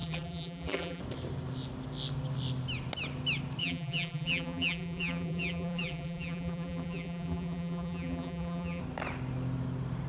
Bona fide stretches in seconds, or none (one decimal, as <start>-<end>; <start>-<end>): 1.0-3.6; 8.8-10.1